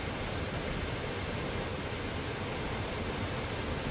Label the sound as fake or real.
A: real